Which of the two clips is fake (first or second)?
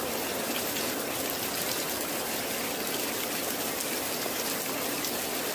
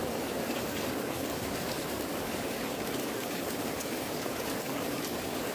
second